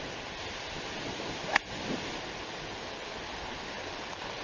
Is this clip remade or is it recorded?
recorded